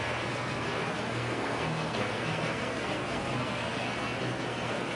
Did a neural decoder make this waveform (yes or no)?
yes